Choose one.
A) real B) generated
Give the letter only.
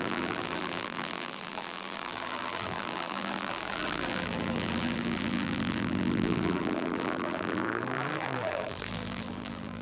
B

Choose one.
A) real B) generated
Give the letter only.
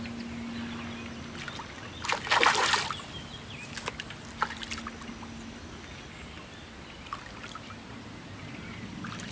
A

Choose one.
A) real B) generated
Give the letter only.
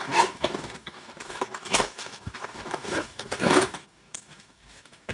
B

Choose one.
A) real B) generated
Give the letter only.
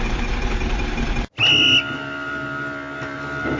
A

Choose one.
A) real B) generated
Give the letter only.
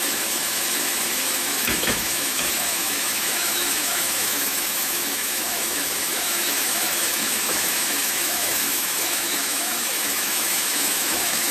B